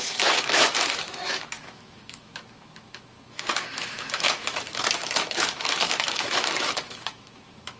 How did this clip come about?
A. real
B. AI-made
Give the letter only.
B